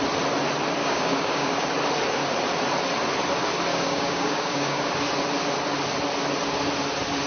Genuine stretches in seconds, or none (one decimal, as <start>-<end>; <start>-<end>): 0.0-0.8; 1.7-3.7; 4.9-7.3